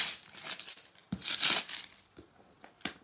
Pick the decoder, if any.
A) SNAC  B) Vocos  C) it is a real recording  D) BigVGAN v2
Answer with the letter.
C